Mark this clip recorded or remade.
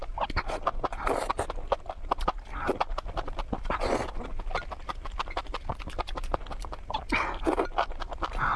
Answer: recorded